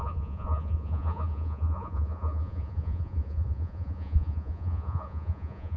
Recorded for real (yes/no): no